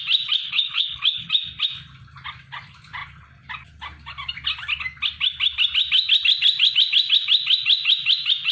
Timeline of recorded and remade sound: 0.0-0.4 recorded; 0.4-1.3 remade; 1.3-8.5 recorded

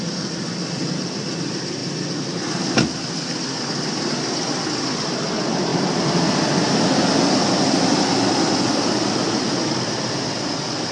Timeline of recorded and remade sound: 0.0-10.9 recorded

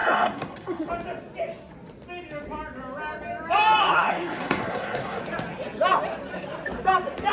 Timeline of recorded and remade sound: 0.0-0.9 remade; 0.9-3.8 recorded; 3.8-5.2 remade; 5.2-7.3 recorded

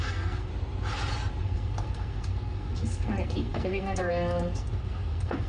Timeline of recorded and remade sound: 0.0-0.5 remade; 0.5-1.4 recorded; 1.4-5.5 remade

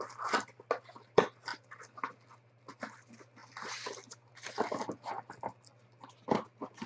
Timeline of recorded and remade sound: 0.0-6.9 recorded

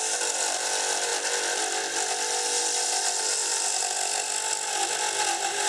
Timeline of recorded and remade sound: 0.0-5.7 recorded